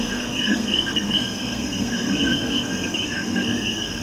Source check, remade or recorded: remade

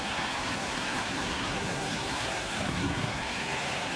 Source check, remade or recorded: remade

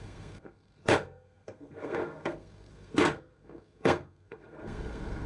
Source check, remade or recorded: remade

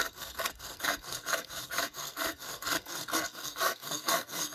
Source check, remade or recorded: remade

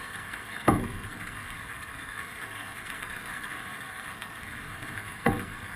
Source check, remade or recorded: remade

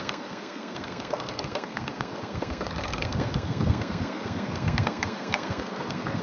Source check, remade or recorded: remade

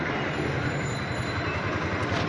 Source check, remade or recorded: recorded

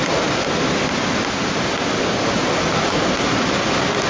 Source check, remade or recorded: recorded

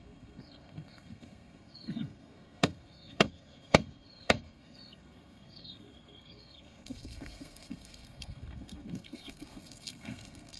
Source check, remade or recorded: remade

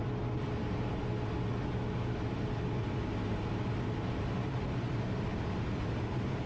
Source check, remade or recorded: recorded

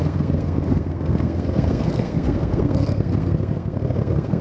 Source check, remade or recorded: remade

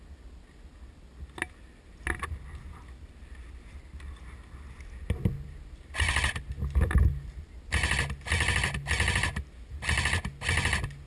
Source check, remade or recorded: recorded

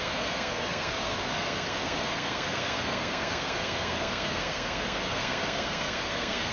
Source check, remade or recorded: remade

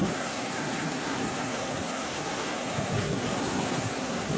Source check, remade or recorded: remade